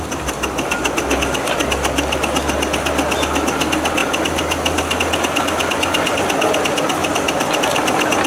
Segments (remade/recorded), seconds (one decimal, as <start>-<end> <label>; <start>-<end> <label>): 0.0-7.0 recorded; 7.0-7.6 remade; 7.6-8.3 recorded